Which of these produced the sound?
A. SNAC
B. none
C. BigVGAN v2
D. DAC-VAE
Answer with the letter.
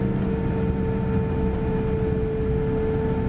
B